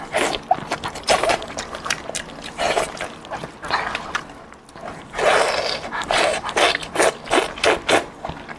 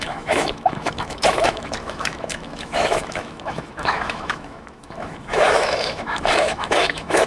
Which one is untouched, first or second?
first